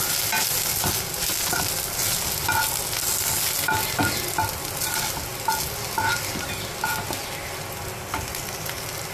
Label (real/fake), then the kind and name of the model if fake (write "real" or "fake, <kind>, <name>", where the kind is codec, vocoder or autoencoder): real